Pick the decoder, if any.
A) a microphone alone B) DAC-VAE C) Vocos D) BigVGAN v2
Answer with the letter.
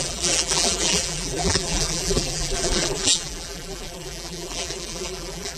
D